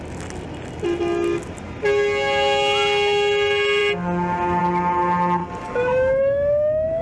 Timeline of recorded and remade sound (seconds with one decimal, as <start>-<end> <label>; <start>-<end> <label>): 0.0-5.4 recorded; 5.4-7.0 remade